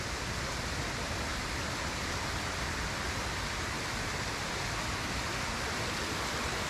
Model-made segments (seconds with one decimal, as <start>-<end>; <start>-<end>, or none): none